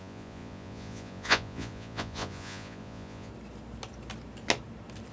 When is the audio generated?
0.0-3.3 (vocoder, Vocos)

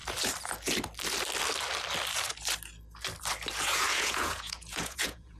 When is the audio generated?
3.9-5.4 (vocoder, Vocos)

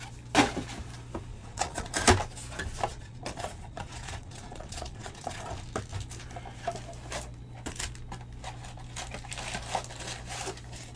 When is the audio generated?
1.3-1.9 (vocoder, Vocos); 2.9-5.5

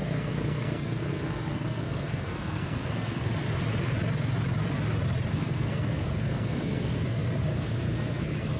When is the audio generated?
0.0-3.3 (codec, SNAC); 5.3-8.6

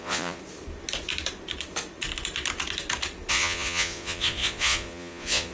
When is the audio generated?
0.0-0.4 (vocoder, Vocos); 3.3-5.5

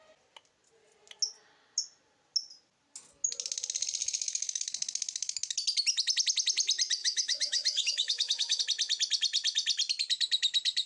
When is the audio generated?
4.0-4.6 (autoencoder, DAC-VAE); 7.0-8.6

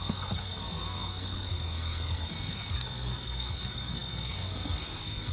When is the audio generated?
0.0-5.3 (codec, SNAC)

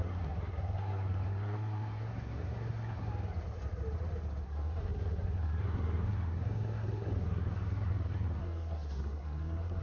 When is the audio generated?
0.0-3.1 (codec, SNAC); 4.4-9.8